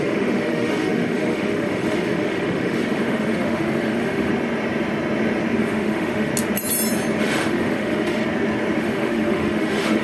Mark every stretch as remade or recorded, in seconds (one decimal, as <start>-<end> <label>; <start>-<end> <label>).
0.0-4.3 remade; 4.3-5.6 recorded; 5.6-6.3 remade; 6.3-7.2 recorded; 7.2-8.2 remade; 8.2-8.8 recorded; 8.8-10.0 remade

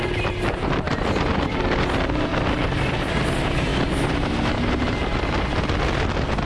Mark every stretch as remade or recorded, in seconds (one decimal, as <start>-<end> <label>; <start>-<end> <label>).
0.0-2.3 remade; 2.3-2.9 recorded; 2.9-3.7 remade; 3.7-4.5 recorded; 4.5-6.5 remade

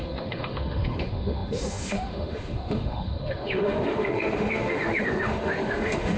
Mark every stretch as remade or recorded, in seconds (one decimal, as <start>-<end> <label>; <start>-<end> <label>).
0.0-6.2 remade

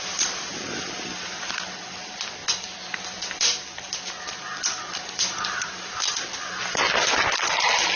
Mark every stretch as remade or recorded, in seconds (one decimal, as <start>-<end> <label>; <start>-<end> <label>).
0.0-8.0 recorded

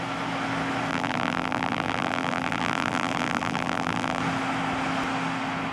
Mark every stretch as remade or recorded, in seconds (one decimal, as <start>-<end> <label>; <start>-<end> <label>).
0.0-0.9 recorded; 0.9-4.2 remade; 4.2-5.7 recorded

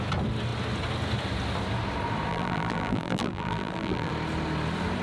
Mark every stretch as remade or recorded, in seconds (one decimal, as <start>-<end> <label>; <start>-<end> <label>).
0.0-2.3 recorded; 2.3-4.1 remade; 4.1-5.0 recorded